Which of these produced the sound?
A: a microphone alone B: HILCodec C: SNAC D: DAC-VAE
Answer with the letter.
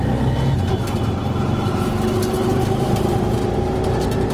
A